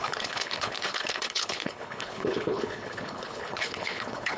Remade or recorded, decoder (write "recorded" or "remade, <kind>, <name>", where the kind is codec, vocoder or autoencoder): remade, codec, HILCodec